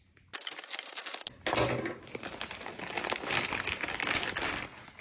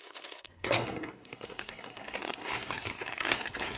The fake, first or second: second